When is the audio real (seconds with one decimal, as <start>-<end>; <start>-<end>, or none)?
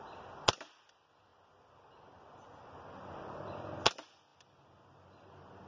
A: 0.0-5.7